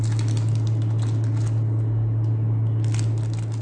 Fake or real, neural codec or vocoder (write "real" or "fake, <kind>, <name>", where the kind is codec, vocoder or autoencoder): real